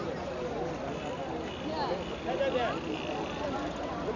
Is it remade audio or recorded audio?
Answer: recorded